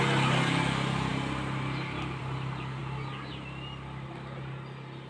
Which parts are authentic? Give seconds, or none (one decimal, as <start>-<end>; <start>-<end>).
0.0-5.1